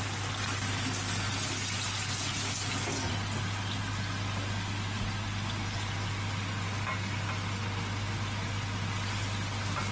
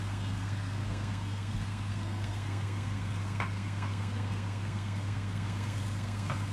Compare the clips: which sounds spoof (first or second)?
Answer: second